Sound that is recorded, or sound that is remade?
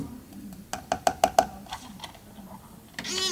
recorded